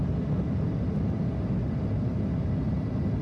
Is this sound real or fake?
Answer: real